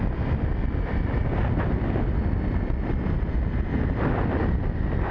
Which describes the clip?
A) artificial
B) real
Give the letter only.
B